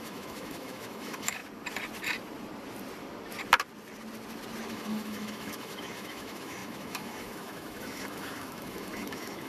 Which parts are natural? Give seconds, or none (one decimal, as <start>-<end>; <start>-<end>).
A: 1.4-4.7

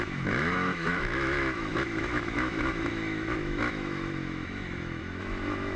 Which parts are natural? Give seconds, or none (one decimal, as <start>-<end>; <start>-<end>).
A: none

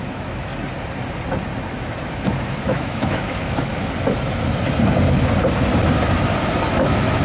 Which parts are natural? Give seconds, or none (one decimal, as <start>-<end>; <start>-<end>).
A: 0.5-2.6; 3.7-6.7

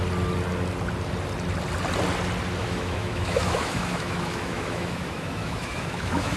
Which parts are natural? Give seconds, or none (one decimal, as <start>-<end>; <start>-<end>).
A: 0.0-2.6

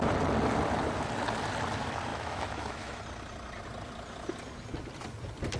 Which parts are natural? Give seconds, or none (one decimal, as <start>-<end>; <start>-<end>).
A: 0.0-2.1; 3.0-5.6

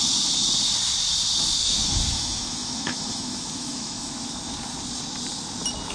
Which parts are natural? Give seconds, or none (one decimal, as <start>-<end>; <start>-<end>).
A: 0.0-1.6; 4.3-5.9

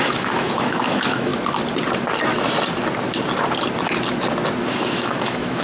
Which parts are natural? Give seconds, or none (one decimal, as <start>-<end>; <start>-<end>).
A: 1.3-4.7